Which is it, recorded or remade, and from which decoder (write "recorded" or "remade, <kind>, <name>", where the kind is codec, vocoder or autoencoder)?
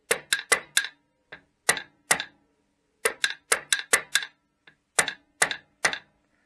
recorded